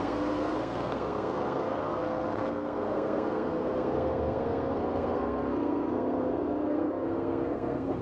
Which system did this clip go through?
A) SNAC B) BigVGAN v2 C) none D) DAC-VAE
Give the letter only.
A